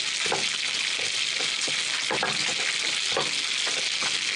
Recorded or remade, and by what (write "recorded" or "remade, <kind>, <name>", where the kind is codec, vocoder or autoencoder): recorded